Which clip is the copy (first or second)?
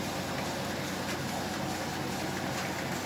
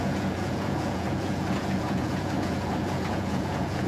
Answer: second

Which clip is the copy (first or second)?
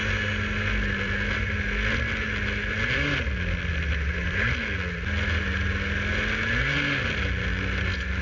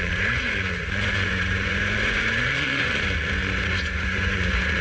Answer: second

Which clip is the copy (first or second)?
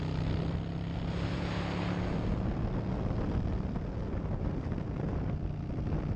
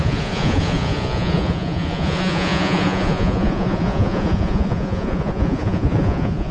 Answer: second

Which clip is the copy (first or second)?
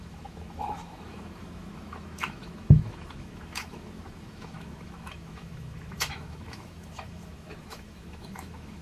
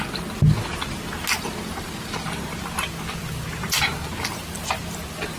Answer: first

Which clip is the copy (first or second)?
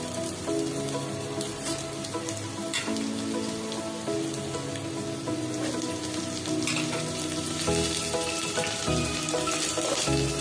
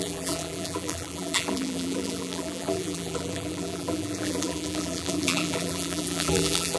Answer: second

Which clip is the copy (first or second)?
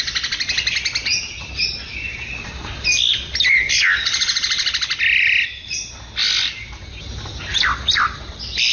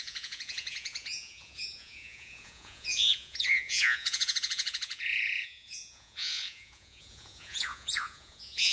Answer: second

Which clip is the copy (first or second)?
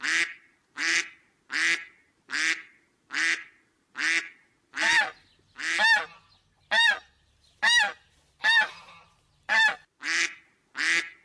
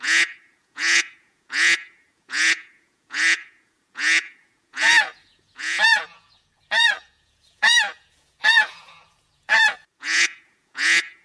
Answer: second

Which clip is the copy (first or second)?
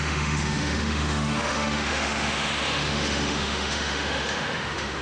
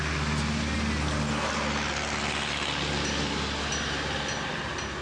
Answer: first